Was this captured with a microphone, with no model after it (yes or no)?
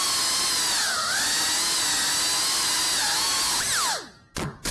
yes